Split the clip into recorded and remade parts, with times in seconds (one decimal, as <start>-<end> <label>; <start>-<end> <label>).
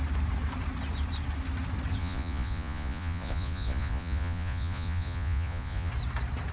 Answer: 0.0-2.0 recorded; 2.0-5.9 remade; 5.9-6.5 recorded